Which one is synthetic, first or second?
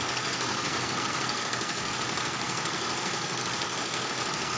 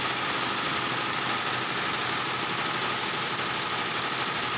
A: first